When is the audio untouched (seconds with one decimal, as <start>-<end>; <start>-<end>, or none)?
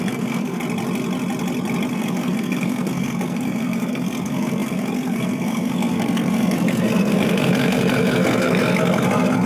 0.6-1.9